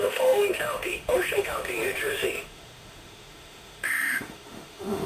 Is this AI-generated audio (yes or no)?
yes